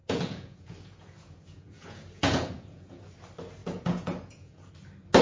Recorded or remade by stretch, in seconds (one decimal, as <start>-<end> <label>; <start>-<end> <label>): 0.0-3.1 remade; 3.1-3.6 recorded; 3.6-4.7 remade; 4.7-5.2 recorded